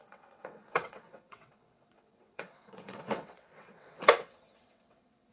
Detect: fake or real fake